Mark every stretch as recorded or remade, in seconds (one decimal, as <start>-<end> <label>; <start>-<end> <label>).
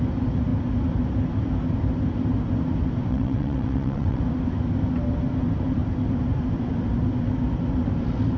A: 0.0-3.1 recorded; 3.1-4.2 remade; 4.2-8.4 recorded